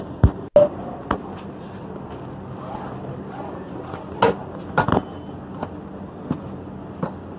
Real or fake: real